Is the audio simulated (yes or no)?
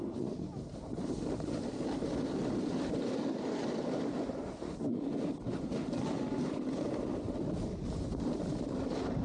no